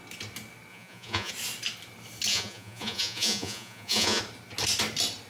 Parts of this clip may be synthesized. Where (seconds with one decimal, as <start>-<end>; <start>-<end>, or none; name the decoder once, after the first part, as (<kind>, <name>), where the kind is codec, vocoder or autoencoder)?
0.7-1.3 (vocoder, Vocos); 2.3-4.2